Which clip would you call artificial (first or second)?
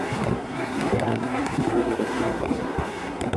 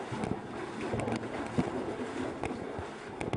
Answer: first